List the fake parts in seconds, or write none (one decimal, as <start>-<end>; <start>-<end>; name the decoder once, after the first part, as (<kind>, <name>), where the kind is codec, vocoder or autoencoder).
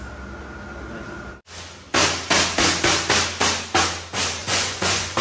4.4-5.2 (vocoder, Vocos)